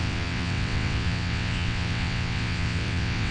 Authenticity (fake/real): fake